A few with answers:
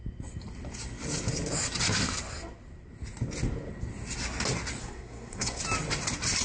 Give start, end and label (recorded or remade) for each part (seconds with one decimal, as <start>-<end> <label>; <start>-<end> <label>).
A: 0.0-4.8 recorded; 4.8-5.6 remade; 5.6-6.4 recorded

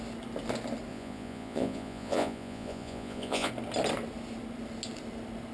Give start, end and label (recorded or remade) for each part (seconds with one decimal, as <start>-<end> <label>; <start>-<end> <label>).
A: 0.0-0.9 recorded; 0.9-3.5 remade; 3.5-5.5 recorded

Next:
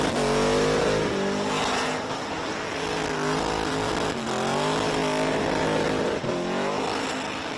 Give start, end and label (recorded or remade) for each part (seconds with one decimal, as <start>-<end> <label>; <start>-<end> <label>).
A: 0.0-7.6 recorded

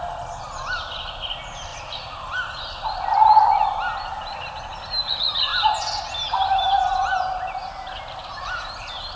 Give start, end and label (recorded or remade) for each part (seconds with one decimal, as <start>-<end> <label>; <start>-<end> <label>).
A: 0.0-1.7 recorded; 1.7-5.1 remade; 5.1-5.5 recorded; 5.5-6.8 remade; 6.8-7.6 recorded; 7.6-9.2 remade